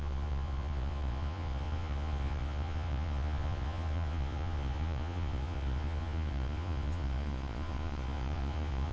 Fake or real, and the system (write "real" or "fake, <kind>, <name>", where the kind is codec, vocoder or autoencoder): fake, vocoder, Vocos